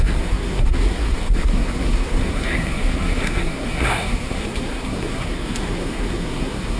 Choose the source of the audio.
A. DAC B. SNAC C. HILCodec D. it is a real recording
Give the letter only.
B